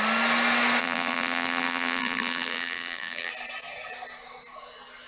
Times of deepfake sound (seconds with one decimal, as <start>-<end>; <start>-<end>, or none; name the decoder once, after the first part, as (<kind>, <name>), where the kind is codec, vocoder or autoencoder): 0.8-3.3 (vocoder, BigVGAN v2)

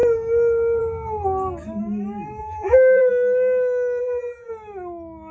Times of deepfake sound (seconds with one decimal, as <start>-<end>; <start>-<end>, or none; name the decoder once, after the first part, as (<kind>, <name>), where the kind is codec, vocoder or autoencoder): 2.4-3.1 (vocoder, BigVGAN v2); 4.0-4.5

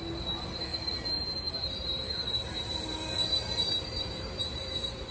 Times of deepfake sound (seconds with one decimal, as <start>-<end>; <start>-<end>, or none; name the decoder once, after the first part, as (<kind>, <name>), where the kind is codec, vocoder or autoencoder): 0.7-3.1 (vocoder, BigVGAN v2); 3.9-5.1

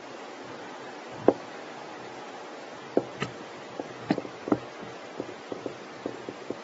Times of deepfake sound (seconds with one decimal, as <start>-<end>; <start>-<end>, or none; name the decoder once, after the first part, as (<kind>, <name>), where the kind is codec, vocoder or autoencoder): none

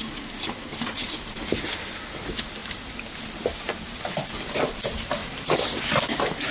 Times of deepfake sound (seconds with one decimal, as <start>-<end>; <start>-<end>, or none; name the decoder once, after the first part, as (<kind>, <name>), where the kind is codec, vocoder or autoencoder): 5.2-5.8 (vocoder, BigVGAN v2)